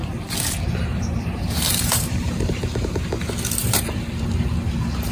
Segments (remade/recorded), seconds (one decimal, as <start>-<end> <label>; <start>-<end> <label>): 0.0-0.9 recorded; 0.9-3.0 remade; 3.0-3.6 recorded; 3.6-4.5 remade; 4.5-5.1 recorded